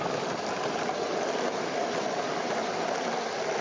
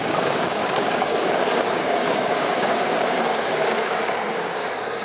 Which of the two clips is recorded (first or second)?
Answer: first